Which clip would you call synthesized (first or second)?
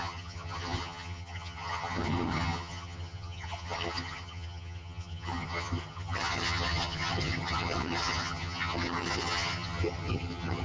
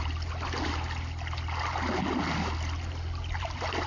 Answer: first